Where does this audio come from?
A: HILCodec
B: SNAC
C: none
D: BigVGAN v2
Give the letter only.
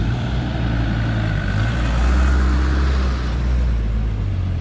C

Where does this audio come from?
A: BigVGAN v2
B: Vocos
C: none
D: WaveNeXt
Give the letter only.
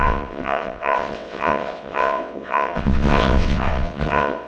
D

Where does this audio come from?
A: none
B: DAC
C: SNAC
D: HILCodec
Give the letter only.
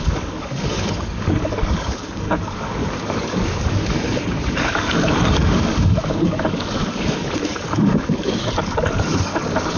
B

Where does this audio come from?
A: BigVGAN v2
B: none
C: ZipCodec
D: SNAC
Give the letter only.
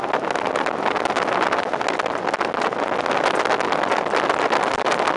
B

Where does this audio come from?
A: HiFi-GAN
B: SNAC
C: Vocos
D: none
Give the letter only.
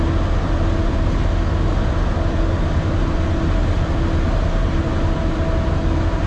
D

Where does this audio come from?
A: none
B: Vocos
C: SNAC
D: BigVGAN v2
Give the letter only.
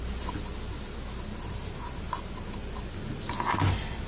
A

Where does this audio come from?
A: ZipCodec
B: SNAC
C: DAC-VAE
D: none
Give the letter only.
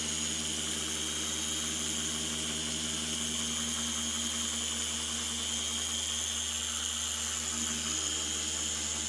D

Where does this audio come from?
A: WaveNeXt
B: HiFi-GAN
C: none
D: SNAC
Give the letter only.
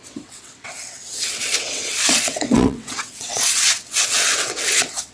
A